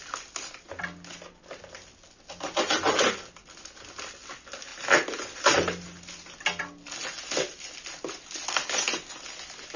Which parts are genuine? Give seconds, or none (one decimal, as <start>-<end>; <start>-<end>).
0.0-9.8

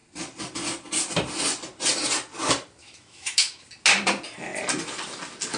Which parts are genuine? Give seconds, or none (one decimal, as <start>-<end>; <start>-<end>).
0.0-2.8; 3.6-5.6

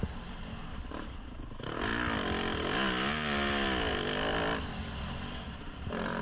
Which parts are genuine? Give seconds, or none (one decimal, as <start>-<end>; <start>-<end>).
1.9-5.6

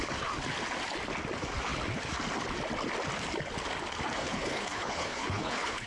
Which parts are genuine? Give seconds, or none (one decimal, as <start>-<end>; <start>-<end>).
0.0-4.2

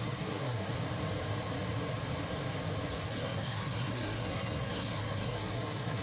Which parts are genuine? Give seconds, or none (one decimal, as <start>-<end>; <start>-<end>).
0.7-3.1

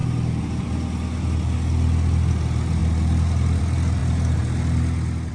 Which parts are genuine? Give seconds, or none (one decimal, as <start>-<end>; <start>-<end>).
0.0-5.3

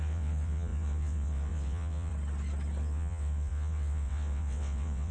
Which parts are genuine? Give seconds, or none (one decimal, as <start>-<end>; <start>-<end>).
2.1-2.8

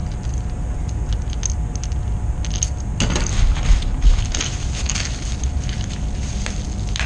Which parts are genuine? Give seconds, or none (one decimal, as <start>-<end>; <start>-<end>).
0.0-3.7; 6.3-7.1